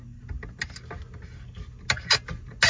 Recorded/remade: recorded